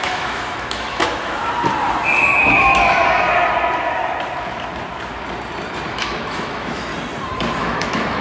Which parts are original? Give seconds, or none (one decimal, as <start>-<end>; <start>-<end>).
1.4-2.4; 3.0-5.9; 6.9-7.6